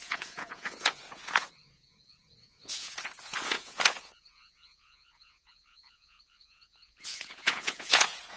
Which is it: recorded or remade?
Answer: remade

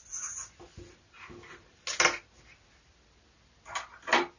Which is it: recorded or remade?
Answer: recorded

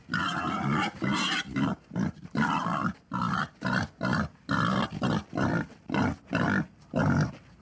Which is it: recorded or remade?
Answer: recorded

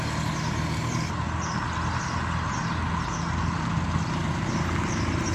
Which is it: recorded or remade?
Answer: recorded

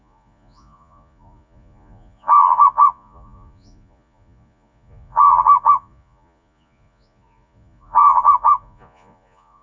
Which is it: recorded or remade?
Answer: remade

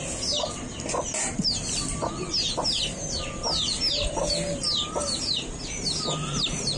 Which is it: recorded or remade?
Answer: recorded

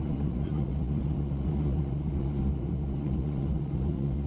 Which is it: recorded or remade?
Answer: remade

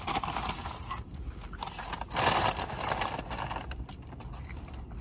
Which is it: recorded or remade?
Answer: recorded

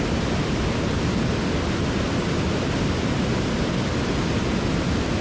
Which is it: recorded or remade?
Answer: recorded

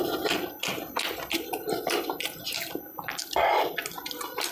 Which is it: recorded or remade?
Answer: recorded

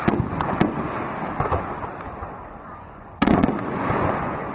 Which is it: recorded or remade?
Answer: remade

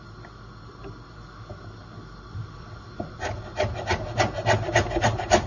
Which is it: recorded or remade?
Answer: recorded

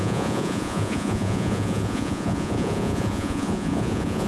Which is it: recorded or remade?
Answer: remade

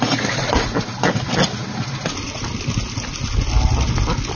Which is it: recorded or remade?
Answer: recorded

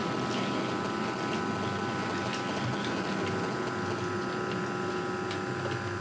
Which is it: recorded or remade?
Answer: recorded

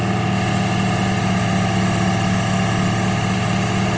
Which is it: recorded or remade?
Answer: recorded